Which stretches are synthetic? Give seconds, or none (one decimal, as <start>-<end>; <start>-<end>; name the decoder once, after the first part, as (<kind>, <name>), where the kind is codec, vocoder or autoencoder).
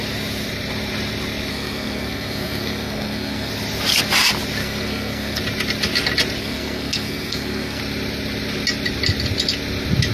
1.5-3.5 (codec, SNAC); 4.6-5.4; 6.4-7.8